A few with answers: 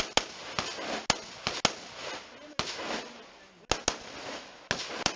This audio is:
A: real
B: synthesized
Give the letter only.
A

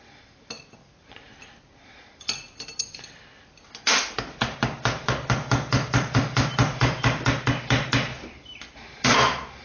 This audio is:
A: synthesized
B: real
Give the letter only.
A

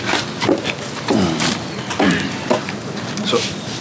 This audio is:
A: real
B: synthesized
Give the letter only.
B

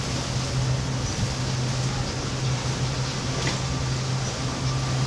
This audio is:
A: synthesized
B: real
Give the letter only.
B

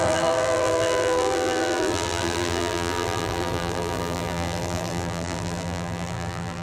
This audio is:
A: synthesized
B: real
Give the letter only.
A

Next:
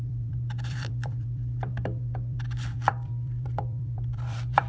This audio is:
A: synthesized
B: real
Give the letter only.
A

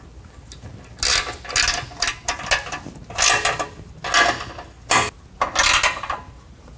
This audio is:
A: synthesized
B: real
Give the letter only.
B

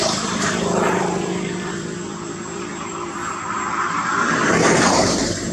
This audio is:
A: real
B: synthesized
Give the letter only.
B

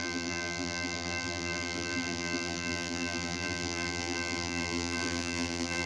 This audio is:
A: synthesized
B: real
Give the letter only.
A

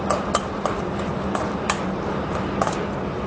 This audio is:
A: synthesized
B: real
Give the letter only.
A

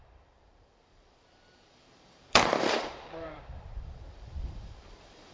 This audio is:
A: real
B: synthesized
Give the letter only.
B